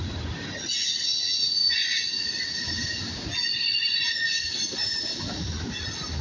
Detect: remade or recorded recorded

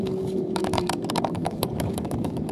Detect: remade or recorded remade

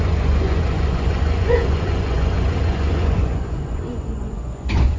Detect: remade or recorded remade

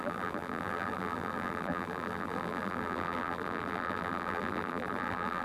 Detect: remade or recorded remade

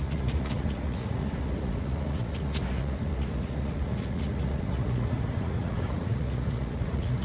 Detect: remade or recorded remade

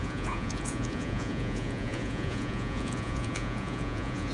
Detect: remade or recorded remade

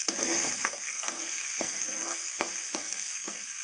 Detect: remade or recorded remade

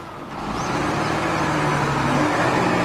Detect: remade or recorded recorded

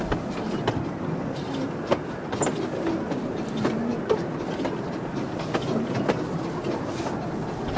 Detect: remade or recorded recorded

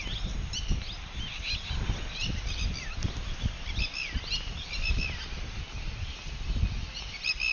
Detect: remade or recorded recorded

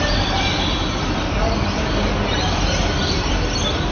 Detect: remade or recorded recorded